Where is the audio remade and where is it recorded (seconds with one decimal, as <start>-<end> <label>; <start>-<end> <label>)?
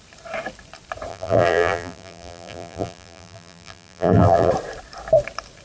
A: 0.0-1.1 recorded; 1.1-4.5 remade; 4.5-5.6 recorded